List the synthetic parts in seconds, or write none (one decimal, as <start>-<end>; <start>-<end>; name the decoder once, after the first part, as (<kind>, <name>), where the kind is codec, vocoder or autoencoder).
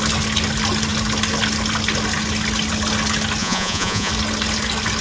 3.4-4.1 (vocoder, Vocos)